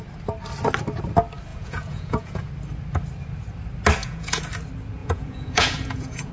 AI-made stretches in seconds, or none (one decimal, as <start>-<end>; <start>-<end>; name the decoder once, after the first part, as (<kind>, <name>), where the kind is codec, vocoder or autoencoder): 1.5-2.5 (vocoder, Vocos); 4.0-4.5; 5.0-6.3